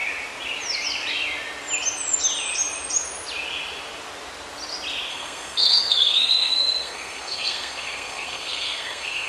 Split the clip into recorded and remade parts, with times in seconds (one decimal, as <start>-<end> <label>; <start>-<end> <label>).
0.0-5.1 recorded; 5.1-9.3 remade